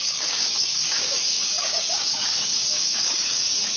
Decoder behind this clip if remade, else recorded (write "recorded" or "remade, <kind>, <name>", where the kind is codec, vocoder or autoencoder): remade, codec, DAC